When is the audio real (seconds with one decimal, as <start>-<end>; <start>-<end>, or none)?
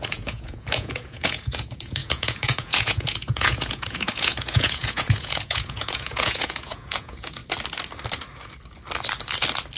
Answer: 7.4-9.8